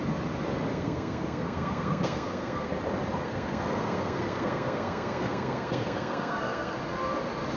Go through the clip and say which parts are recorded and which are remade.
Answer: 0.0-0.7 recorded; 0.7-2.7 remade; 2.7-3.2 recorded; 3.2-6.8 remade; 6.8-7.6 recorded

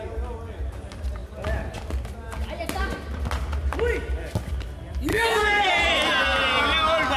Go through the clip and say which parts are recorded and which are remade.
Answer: 0.0-5.1 recorded; 5.1-5.7 remade; 5.7-7.2 recorded

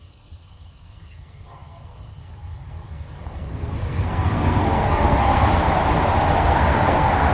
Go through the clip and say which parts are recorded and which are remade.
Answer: 0.0-5.8 remade; 5.8-6.3 recorded; 6.3-7.3 remade

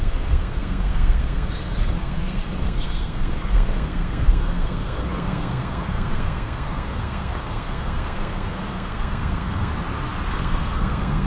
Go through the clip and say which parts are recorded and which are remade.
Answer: 0.0-9.7 remade; 9.7-10.3 recorded; 10.3-11.3 remade

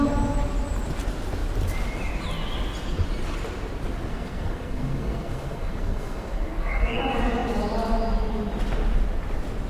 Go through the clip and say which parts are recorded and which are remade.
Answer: 0.0-4.1 recorded; 4.1-7.0 remade; 7.0-9.7 recorded

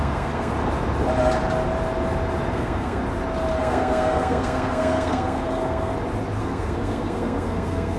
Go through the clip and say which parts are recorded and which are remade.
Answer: 0.0-0.5 remade; 0.5-2.5 recorded; 2.5-3.0 remade; 3.0-3.6 recorded; 3.6-5.9 remade; 5.9-6.4 recorded; 6.4-8.0 remade

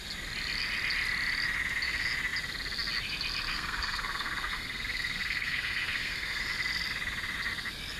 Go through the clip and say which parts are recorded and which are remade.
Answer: 0.0-3.5 recorded; 3.5-6.4 remade; 6.4-8.0 recorded